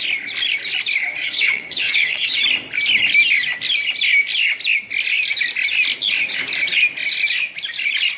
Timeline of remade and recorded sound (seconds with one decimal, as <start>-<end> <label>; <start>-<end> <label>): 0.0-1.1 recorded; 1.1-2.3 remade; 2.3-8.2 recorded